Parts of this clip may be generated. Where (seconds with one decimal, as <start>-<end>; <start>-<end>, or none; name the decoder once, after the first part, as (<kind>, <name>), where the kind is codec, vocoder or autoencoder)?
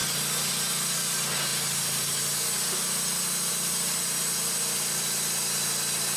none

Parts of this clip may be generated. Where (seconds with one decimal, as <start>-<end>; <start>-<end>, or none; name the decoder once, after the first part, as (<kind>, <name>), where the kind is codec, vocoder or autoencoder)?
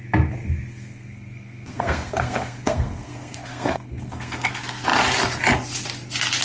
0.7-4.5 (codec, SNAC)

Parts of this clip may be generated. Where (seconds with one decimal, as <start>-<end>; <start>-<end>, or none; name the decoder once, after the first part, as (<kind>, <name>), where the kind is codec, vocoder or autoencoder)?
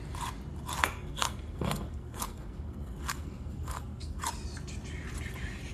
0.8-4.2 (codec, SNAC)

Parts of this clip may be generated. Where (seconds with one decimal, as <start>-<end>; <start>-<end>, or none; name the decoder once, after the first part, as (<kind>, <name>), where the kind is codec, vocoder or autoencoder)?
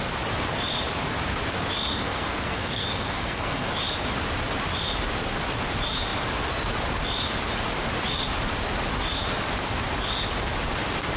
1.9-3.7 (codec, SNAC)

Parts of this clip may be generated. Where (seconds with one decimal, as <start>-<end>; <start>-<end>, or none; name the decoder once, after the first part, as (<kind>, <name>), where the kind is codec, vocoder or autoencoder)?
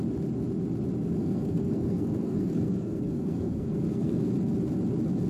1.2-4.3 (codec, SNAC)